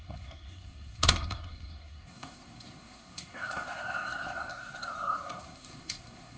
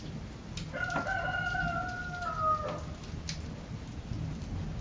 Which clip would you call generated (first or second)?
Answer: first